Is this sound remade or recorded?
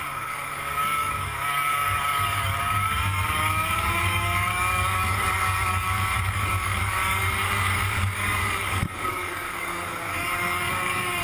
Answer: remade